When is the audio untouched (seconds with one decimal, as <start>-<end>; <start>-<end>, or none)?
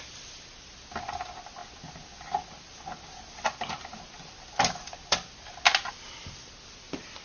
0.0-7.2